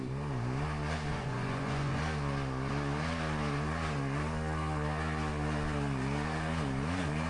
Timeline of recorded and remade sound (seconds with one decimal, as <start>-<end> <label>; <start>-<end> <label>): 0.0-1.1 recorded; 1.1-2.0 remade; 2.0-7.3 recorded